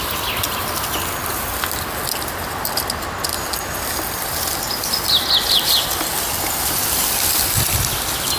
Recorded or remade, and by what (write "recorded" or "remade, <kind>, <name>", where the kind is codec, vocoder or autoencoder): recorded